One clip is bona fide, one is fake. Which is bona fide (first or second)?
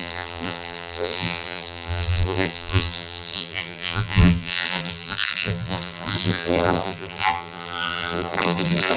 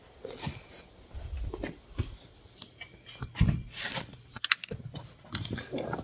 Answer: second